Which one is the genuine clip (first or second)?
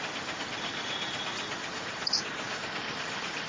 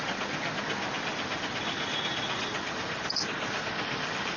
second